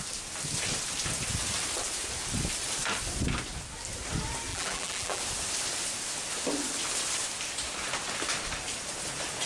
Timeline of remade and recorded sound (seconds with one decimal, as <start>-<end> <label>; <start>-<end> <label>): 0.0-4.5 recorded; 4.5-5.2 remade; 5.2-9.5 recorded